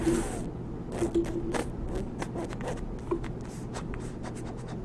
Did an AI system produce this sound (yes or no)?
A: no